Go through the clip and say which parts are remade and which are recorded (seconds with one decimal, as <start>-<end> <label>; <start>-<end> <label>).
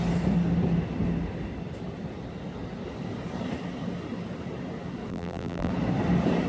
0.0-5.1 recorded; 5.1-5.7 remade; 5.7-6.5 recorded